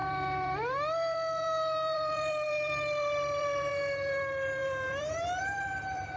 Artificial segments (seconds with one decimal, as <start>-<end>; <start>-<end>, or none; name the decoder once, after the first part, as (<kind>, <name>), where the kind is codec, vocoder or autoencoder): 0.0-6.2 (vocoder, BigVGAN v2)